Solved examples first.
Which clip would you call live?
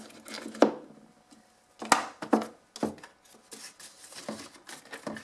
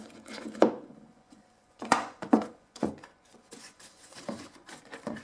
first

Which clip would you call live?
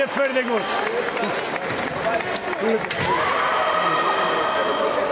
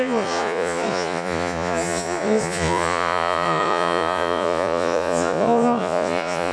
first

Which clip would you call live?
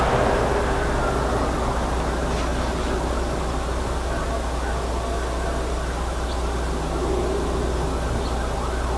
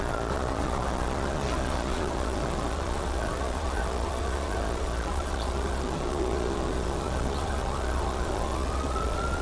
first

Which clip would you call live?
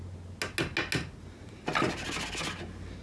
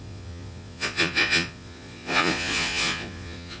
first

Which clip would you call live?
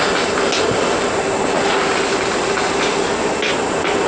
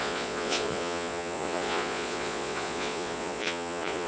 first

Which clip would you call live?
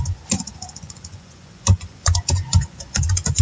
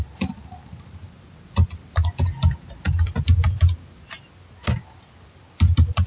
second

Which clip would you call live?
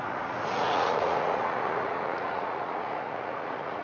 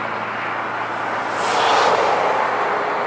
second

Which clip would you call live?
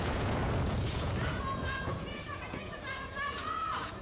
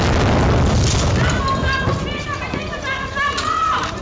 second